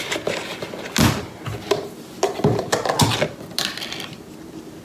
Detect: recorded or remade recorded